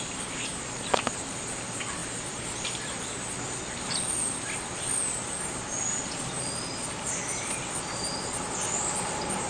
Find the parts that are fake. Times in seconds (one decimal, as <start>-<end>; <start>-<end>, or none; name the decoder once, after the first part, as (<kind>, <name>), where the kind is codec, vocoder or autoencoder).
2.0-2.7 (vocoder, BigVGAN v2)